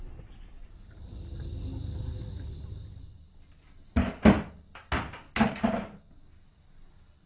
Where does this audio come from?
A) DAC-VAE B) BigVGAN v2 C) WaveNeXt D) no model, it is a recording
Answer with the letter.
D